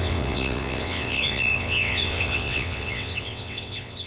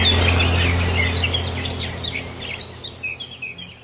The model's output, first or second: first